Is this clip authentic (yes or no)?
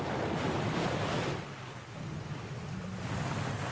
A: yes